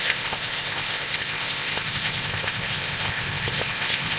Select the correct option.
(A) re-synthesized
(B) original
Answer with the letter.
A